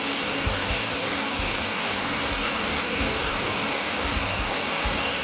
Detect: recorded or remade remade